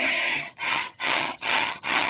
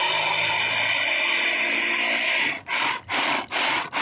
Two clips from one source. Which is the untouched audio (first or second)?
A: second